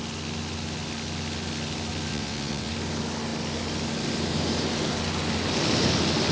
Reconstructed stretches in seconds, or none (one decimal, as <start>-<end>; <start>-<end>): 2.1-2.7